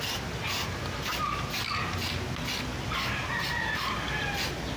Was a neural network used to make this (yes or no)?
no